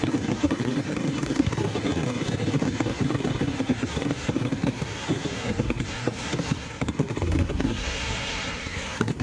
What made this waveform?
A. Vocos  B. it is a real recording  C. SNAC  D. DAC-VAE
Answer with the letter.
C